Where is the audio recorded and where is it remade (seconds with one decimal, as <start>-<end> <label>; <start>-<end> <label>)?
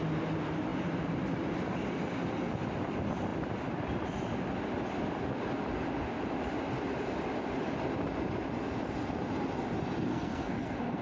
0.0-10.1 recorded; 10.1-11.0 remade